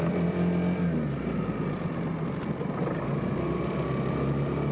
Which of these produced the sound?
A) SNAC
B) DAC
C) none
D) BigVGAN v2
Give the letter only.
C